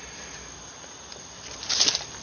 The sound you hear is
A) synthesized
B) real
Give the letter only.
B